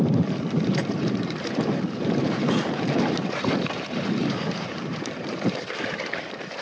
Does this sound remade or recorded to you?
remade